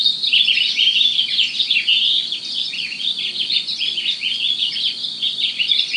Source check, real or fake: fake